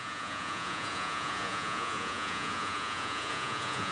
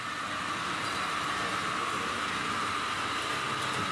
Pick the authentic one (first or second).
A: second